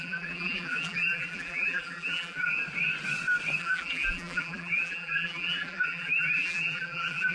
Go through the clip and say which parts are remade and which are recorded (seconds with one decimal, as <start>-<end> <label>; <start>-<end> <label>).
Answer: 0.0-2.5 remade; 2.5-3.6 recorded; 3.6-7.3 remade